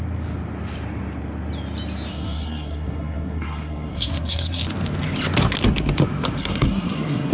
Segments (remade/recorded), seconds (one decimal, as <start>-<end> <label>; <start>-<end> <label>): 0.0-2.1 recorded; 2.1-4.6 remade; 4.6-6.4 recorded; 6.4-7.3 remade